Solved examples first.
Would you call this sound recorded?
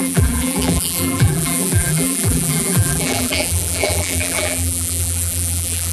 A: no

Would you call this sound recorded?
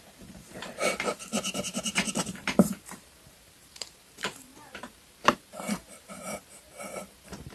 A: no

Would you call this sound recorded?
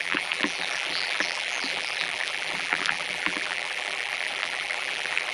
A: no